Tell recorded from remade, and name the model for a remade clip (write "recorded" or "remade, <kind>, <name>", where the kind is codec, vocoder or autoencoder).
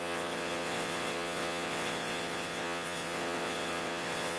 remade, vocoder, WaveNeXt